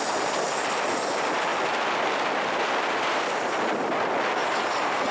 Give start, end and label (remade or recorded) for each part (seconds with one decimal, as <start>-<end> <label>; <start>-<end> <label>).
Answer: 0.0-5.1 recorded